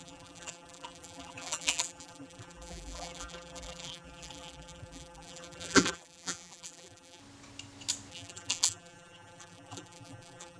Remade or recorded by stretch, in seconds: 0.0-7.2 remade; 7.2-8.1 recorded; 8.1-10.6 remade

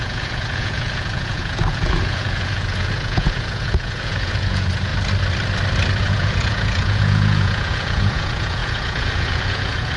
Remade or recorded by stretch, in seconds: 0.0-4.9 remade; 4.9-6.0 recorded; 6.0-10.0 remade

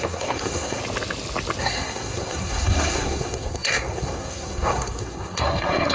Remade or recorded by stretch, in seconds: 0.0-0.8 remade; 0.8-1.6 recorded; 1.6-5.9 remade

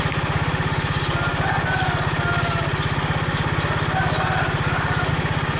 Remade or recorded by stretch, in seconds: 0.0-5.6 recorded

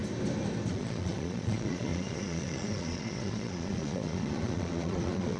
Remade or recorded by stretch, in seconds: 0.0-0.7 recorded; 0.7-5.4 remade

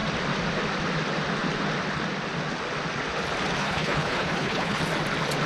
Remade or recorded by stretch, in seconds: 0.0-3.6 recorded; 3.6-4.8 remade; 4.8-5.5 recorded

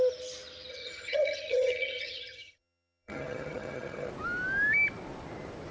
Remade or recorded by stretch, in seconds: 0.0-0.7 recorded; 0.7-4.1 remade; 4.1-5.7 recorded

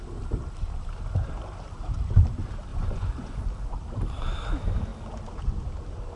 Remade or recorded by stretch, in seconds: 0.0-2.7 recorded; 2.7-3.4 remade; 3.4-6.2 recorded